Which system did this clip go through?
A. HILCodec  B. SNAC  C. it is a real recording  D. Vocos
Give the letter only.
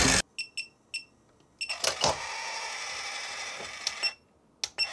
C